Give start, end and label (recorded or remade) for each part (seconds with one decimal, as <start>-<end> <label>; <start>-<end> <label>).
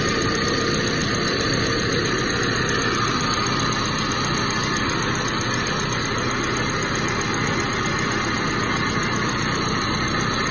0.0-1.0 recorded; 1.0-2.2 remade; 2.2-10.5 recorded